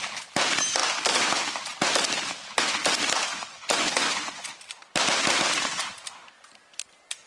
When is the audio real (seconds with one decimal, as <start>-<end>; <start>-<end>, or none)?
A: 0.0-3.3; 4.5-7.3